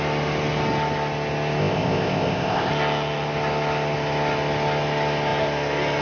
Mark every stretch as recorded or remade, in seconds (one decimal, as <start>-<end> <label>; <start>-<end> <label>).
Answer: 0.0-1.6 recorded; 1.6-2.7 remade; 2.7-6.0 recorded